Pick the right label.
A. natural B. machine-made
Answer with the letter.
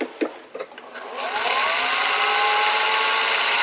A